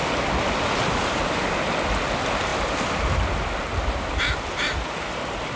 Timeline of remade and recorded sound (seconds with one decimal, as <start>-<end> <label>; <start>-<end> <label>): 0.0-5.6 recorded